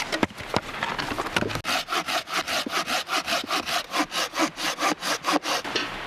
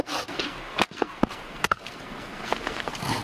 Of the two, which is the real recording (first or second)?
first